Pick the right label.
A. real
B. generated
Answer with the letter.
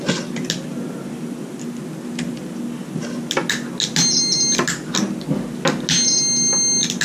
A